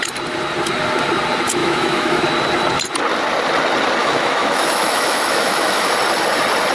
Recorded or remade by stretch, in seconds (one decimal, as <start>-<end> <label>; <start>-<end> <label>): 0.0-1.6 recorded; 1.6-2.2 remade; 2.2-4.0 recorded; 4.0-5.9 remade; 5.9-6.7 recorded